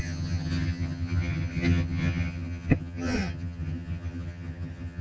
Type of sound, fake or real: fake